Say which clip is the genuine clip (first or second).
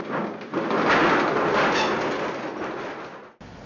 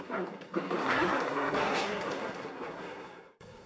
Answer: first